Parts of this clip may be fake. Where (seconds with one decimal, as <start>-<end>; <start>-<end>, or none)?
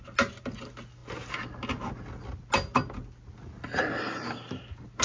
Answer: none